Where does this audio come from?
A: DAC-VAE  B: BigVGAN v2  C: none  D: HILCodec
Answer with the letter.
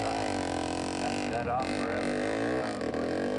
C